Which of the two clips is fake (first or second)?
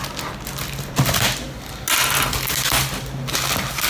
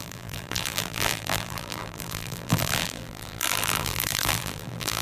second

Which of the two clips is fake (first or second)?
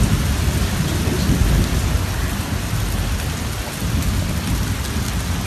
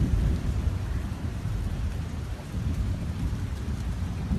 second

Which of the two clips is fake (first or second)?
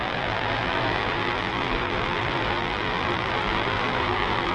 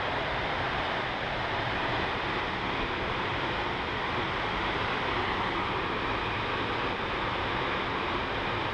first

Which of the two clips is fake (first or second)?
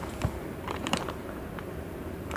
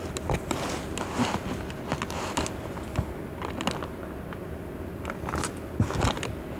first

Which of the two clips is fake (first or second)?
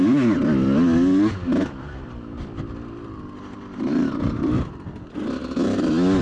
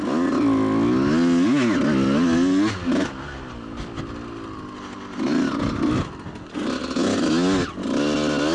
first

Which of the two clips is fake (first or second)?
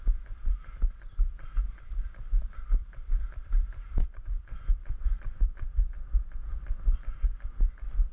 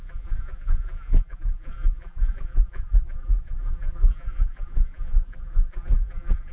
second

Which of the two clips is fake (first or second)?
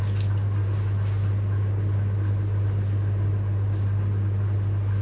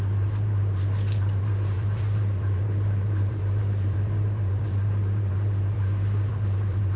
second